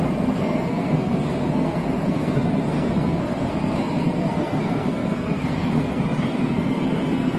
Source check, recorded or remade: remade